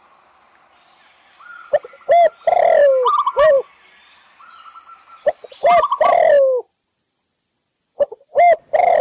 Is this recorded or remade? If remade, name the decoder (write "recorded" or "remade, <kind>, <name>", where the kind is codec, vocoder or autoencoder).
recorded